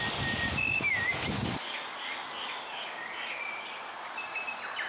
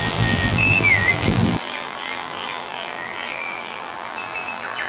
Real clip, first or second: first